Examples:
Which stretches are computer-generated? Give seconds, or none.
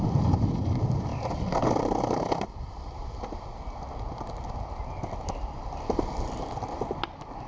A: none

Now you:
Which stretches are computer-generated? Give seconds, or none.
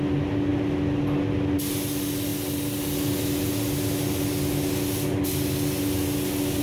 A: none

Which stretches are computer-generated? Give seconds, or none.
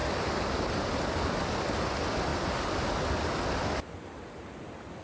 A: none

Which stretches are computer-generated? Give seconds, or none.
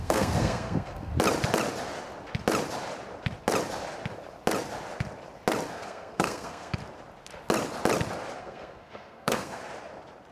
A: 0.0-1.1 (codec, SNAC); 5.7-6.8; 8.4-9.6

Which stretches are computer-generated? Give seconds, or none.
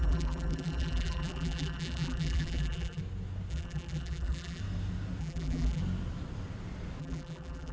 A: 0.0-3.0 (vocoder, BigVGAN v2); 3.5-4.6; 5.2-5.8; 7.0-7.7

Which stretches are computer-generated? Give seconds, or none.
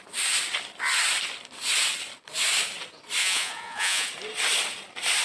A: 3.2-4.1 (vocoder, Vocos)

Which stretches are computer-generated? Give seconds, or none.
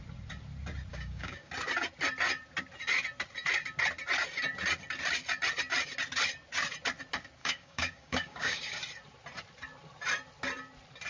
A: 0.9-1.5 (codec, DAC); 7.4-8.8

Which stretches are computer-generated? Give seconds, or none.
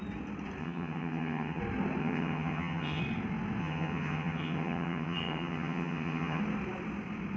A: 0.6-1.6 (vocoder, HiFi-GAN); 2.0-3.0; 3.6-6.4